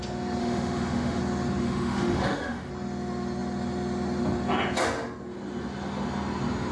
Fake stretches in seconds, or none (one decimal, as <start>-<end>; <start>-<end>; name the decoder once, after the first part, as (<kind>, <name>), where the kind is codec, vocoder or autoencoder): 0.4-1.2 (autoencoder, DAC-VAE); 1.6-2.7